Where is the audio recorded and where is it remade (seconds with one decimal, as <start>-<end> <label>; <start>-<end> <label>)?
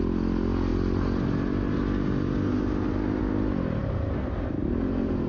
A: 0.0-4.6 recorded; 4.6-5.3 remade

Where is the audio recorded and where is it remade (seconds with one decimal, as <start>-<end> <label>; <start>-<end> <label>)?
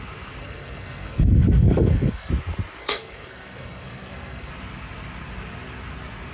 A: 0.0-0.4 recorded; 0.4-2.3 remade; 2.3-2.8 recorded; 2.8-4.5 remade; 4.5-6.3 recorded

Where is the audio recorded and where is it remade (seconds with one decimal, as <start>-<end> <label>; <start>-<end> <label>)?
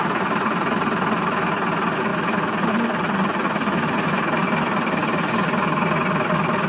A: 0.0-6.7 recorded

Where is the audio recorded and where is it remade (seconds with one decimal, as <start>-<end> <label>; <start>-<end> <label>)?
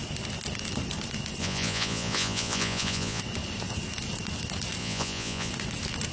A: 0.0-1.4 recorded; 1.4-3.2 remade; 3.2-4.8 recorded; 4.8-5.5 remade; 5.5-6.1 recorded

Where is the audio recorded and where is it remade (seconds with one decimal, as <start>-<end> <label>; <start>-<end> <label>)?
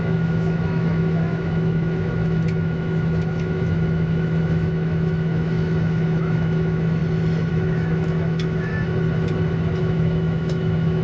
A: 0.0-7.0 remade; 7.0-7.5 recorded; 7.5-8.7 remade; 8.7-9.8 recorded; 9.8-11.0 remade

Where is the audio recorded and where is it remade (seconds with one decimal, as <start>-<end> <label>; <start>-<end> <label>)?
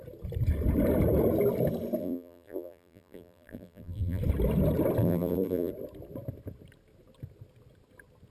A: 0.0-2.0 recorded; 2.0-4.2 remade; 4.2-5.0 recorded; 5.0-5.7 remade; 5.7-8.3 recorded